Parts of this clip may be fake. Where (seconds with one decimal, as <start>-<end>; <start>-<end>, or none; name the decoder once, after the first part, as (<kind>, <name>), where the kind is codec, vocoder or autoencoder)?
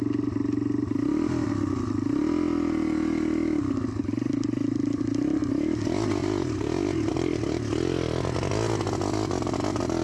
none